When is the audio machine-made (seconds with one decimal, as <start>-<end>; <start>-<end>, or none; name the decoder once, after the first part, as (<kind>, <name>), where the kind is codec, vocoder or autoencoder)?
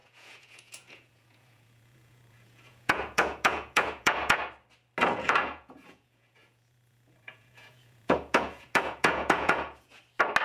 0.0-4.4 (vocoder, Vocos); 5.0-10.0